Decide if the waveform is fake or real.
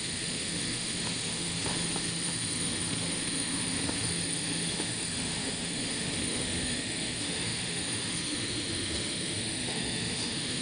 fake